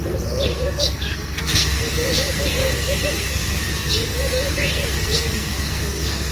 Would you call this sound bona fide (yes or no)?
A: no